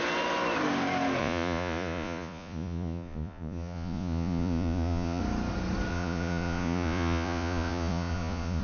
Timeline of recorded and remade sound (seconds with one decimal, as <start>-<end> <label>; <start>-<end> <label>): 0.0-1.2 recorded; 1.2-5.2 remade; 5.2-5.9 recorded; 5.9-8.6 remade